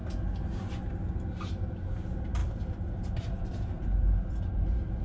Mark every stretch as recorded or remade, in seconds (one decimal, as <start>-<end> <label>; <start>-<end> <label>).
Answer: 0.0-5.0 recorded